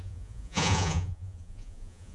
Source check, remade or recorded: remade